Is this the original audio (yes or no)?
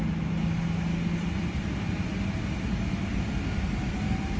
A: yes